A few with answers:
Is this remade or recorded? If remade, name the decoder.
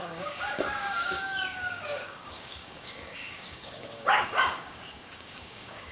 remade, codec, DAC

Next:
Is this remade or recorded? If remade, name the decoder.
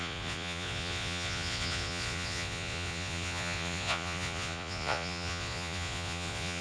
remade, vocoder, Vocos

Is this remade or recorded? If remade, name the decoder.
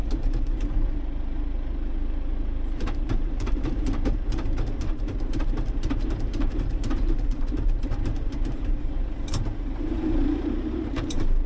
remade, vocoder, BigVGAN v2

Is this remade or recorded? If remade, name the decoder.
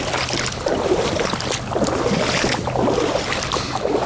recorded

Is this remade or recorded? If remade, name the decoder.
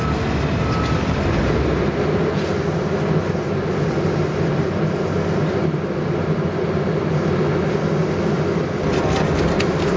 recorded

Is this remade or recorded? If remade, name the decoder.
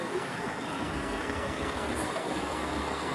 remade, codec, SNAC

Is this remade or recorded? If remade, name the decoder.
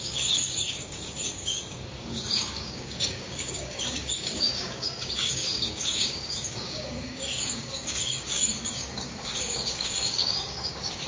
remade, codec, DAC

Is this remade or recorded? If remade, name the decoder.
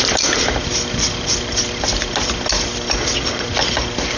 recorded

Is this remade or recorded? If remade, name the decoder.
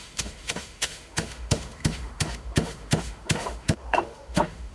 remade, autoencoder, DAC-VAE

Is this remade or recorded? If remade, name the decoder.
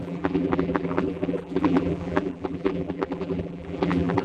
remade, vocoder, BigVGAN v2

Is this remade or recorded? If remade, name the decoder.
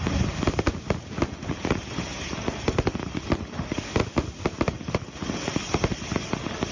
recorded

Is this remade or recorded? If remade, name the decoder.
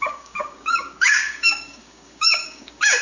remade, codec, DAC